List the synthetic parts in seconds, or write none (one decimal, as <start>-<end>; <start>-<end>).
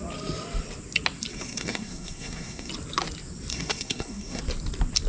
1.3-2.7; 3.5-4.4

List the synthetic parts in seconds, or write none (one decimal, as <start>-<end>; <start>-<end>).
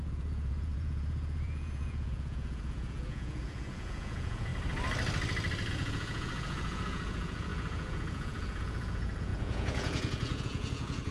0.0-4.5; 5.7-11.1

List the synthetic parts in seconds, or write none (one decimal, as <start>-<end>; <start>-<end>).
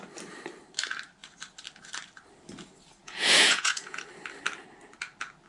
3.0-4.0